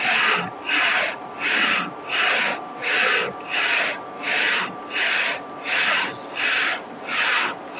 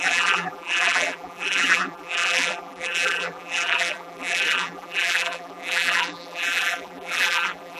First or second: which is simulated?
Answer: second